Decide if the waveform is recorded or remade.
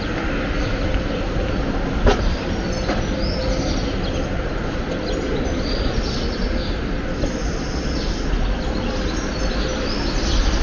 recorded